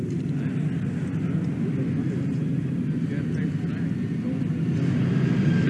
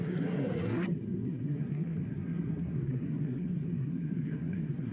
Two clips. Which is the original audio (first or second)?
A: first